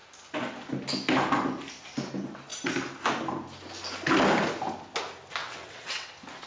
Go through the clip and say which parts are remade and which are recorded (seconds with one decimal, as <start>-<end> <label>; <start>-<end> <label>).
0.0-5.4 recorded; 5.4-6.1 remade; 6.1-6.5 recorded